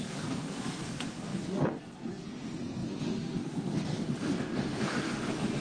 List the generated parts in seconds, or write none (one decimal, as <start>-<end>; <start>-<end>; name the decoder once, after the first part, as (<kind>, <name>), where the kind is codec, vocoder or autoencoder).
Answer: 0.0-5.6 (codec, SNAC)

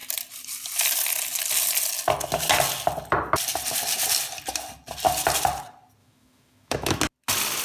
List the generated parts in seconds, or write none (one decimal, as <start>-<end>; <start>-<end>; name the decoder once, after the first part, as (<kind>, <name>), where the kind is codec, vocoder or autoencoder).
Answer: 6.0-7.0 (autoencoder, DAC-VAE)

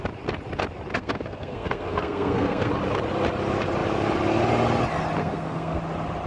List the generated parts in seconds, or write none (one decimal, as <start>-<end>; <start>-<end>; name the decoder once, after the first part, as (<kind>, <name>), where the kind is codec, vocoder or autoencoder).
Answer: 0.9-2.7 (codec, SNAC); 5.2-5.8

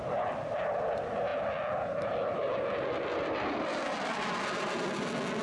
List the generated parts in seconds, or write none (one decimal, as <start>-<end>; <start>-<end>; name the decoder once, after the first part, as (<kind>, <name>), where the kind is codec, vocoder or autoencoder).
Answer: none